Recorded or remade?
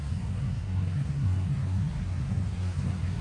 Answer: remade